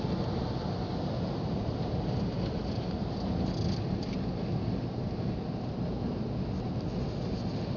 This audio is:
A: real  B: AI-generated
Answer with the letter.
A